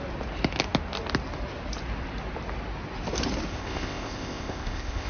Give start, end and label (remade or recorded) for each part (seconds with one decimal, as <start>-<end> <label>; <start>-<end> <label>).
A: 0.0-3.5 recorded; 3.5-5.1 remade